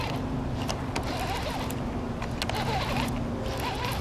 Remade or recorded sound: recorded